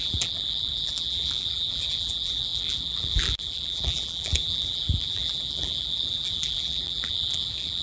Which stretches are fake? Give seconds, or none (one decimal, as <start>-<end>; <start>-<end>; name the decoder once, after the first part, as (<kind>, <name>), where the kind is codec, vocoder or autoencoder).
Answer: 0.0-7.8 (vocoder, BigVGAN v2)